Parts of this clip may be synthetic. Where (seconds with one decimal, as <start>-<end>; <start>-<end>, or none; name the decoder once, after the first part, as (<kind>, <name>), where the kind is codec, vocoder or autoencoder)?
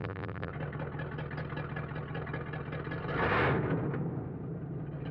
0.0-0.5 (vocoder, BigVGAN v2)